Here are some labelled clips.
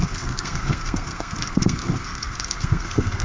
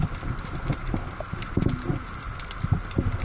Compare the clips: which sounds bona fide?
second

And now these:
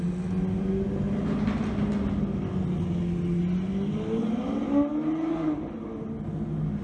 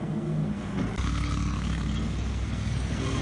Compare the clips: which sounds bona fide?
first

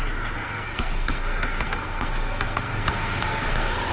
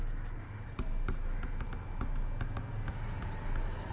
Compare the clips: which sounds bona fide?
second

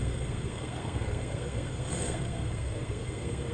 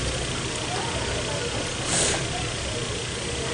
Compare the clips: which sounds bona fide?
second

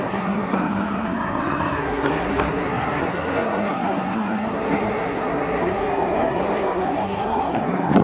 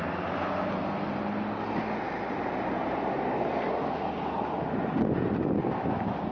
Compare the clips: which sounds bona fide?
second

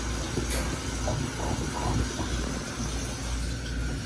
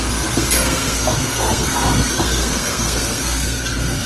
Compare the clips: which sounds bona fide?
first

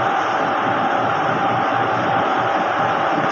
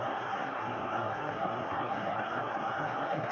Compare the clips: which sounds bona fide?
first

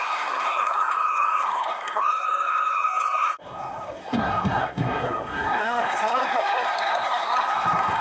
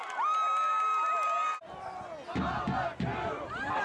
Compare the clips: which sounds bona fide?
second